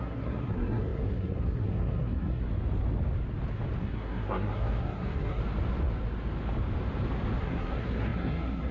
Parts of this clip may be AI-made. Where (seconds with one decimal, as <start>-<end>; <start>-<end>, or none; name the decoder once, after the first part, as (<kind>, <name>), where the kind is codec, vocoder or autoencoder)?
0.0-2.4 (codec, SNAC); 3.8-5.4; 7.4-8.7